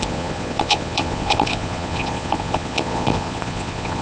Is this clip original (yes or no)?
no